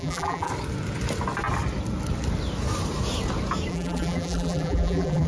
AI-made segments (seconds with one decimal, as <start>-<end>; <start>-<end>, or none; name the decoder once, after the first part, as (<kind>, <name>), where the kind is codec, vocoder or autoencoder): 0.0-0.5 (vocoder, BigVGAN v2); 3.7-5.3